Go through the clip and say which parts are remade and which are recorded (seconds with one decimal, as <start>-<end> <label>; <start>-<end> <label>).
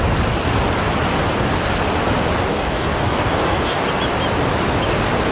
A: 0.0-2.5 recorded; 2.5-3.8 remade; 3.8-5.3 recorded